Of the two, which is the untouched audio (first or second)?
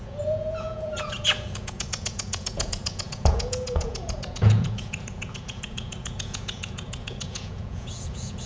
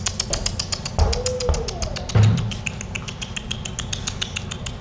second